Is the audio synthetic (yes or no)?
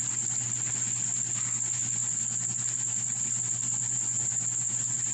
no